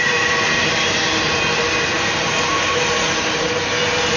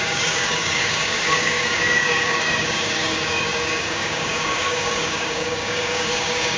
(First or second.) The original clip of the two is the first